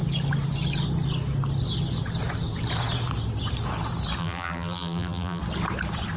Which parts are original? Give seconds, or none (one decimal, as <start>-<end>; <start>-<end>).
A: 0.0-4.2; 5.4-6.2